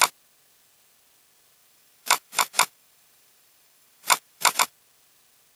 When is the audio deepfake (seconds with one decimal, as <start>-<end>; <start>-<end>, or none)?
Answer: 1.6-4.7